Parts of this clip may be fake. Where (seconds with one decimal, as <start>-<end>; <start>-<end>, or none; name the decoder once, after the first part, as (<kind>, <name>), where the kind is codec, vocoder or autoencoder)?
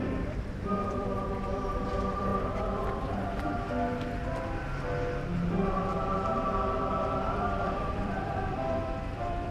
0.0-2.3 (vocoder, BigVGAN v2); 7.1-9.5